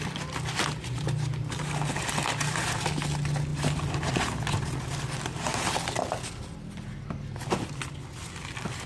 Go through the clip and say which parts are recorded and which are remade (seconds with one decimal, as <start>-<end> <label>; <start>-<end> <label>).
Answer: 0.0-8.9 recorded